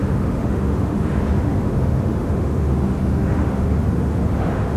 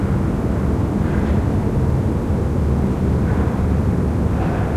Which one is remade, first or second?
first